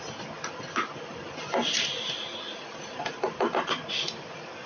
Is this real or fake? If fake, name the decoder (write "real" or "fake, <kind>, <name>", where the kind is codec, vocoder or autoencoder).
real